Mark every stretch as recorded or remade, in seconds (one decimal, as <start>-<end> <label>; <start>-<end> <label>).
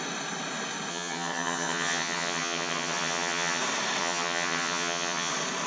0.0-0.9 recorded; 0.9-3.6 remade; 3.6-4.0 recorded; 4.0-5.3 remade; 5.3-5.7 recorded